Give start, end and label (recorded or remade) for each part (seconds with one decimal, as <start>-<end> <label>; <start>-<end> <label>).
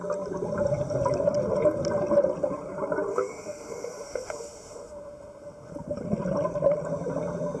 0.0-3.1 recorded; 3.1-5.7 remade; 5.7-7.6 recorded